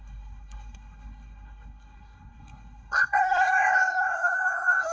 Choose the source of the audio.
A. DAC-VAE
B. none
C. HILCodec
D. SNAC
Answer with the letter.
D